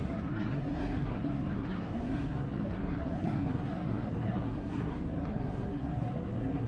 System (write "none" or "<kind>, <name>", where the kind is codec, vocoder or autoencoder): codec, SNAC